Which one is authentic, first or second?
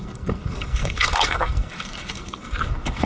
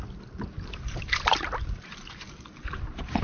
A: second